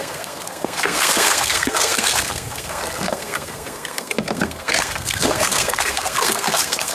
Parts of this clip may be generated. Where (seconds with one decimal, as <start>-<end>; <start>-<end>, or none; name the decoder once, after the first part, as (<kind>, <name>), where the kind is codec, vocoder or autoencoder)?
0.0-6.9 (codec, SNAC)